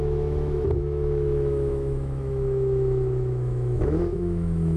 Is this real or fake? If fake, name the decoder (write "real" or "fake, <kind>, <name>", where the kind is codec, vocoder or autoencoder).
fake, autoencoder, DAC-VAE